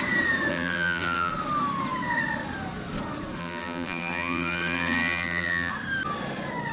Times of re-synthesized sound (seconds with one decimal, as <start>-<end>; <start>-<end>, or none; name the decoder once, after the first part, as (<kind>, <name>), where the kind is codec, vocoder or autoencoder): 0.5-1.3 (vocoder, BigVGAN v2); 3.4-5.7